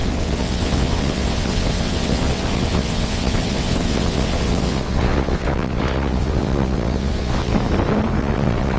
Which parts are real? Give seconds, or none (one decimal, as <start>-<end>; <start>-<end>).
7.5-8.2